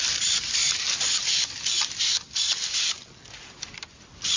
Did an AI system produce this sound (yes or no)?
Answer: no